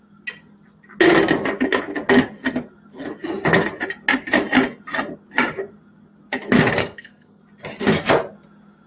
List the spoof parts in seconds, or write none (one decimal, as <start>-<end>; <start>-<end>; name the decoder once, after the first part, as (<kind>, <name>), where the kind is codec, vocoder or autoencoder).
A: 6.8-7.4 (codec, SNAC)